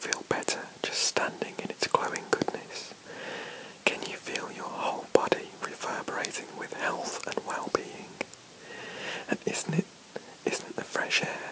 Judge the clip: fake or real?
real